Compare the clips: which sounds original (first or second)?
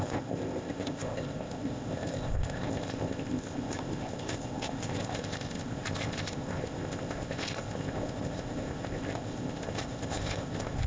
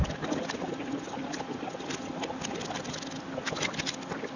second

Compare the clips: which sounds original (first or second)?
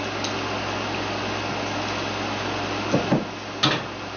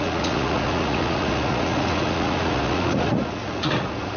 first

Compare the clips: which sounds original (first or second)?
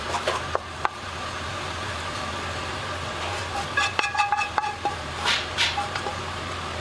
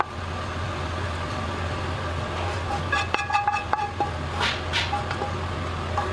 second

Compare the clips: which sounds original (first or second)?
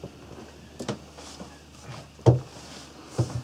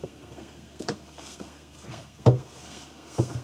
first